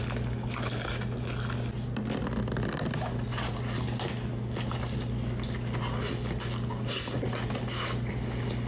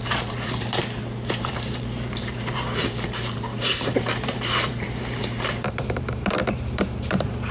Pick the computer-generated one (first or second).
second